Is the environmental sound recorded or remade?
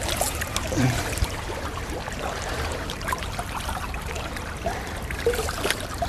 remade